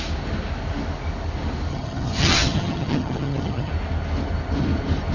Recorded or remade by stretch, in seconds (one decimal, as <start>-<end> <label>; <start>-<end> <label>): 0.0-1.7 recorded; 1.7-3.7 remade; 3.7-5.1 recorded